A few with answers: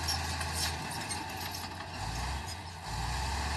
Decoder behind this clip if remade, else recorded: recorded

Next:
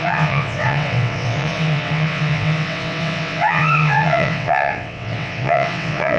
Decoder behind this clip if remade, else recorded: remade, vocoder, WaveNeXt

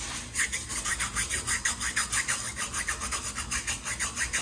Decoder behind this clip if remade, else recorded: recorded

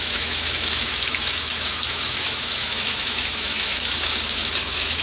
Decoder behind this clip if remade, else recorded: remade, autoencoder, DAC-VAE